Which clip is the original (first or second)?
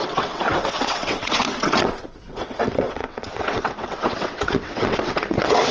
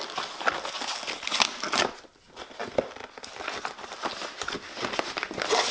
second